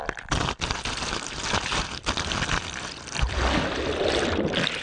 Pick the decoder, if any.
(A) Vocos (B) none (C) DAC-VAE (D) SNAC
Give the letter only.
B